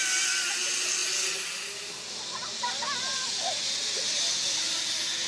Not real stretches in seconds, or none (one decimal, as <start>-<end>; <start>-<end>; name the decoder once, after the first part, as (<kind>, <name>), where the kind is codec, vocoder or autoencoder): none